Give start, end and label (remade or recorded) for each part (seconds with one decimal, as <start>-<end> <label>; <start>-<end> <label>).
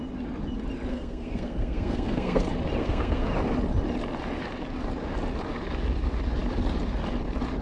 0.0-0.9 recorded; 0.9-2.4 remade; 2.4-2.8 recorded; 2.8-3.3 remade; 3.3-7.6 recorded